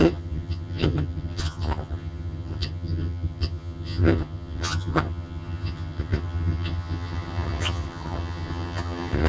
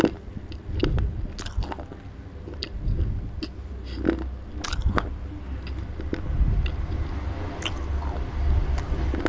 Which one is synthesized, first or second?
first